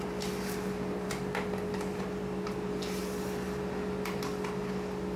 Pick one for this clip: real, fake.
real